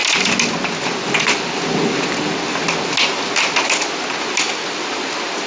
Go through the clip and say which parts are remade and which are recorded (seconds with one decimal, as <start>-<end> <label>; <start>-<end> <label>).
0.0-5.5 recorded